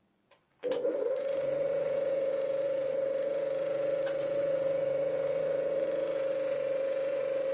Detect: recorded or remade remade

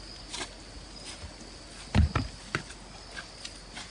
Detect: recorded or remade recorded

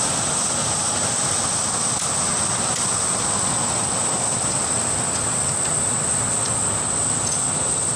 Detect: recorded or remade recorded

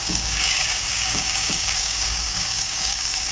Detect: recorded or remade remade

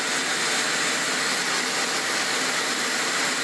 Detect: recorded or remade recorded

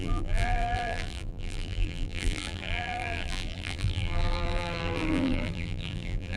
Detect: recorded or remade remade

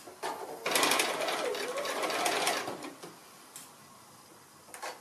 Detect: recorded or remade recorded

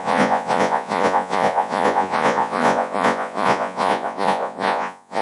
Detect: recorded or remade remade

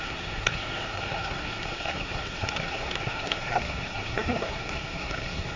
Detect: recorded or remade remade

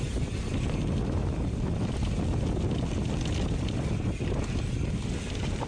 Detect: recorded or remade recorded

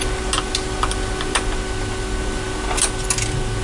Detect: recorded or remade recorded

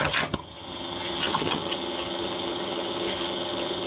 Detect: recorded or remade remade